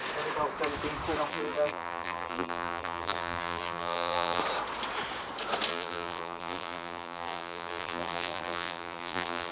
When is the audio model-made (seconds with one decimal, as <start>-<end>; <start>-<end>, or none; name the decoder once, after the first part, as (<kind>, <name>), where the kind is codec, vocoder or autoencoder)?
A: 1.3-4.4 (vocoder, BigVGAN v2); 5.7-9.5